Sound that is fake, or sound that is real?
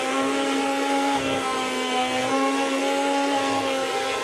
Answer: fake